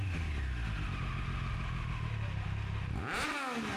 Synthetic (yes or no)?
no